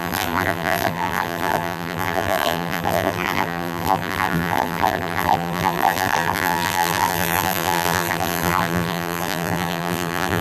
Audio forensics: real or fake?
fake